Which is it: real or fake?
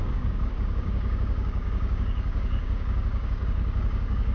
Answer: fake